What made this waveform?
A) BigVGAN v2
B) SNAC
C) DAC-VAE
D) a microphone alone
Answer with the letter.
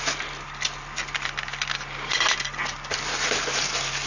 D